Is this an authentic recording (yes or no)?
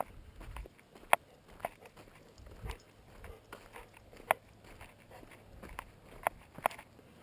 yes